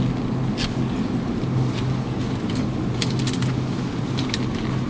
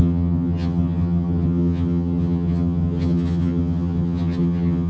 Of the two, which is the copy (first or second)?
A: second